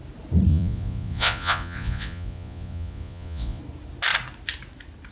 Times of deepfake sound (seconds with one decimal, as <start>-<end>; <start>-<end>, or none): 0.5-3.6